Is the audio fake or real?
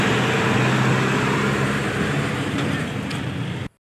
real